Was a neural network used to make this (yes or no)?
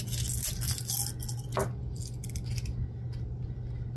no